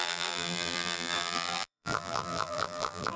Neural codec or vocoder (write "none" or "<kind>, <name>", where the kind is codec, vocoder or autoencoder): vocoder, BigVGAN v2